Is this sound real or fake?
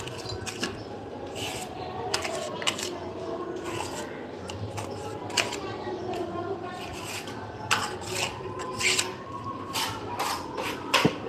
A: real